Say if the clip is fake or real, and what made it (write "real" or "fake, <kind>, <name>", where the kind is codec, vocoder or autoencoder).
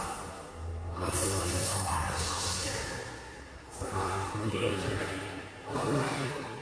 fake, codec, SNAC